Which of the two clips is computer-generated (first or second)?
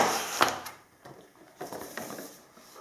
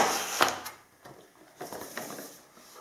first